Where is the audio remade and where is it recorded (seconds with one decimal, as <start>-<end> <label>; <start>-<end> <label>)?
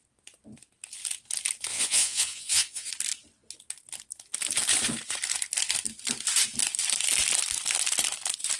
0.0-1.7 recorded; 1.7-2.9 remade; 2.9-8.6 recorded